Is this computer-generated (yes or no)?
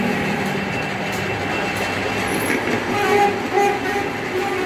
no